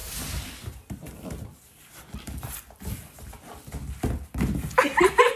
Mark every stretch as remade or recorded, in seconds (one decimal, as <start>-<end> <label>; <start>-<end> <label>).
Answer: 0.0-5.4 recorded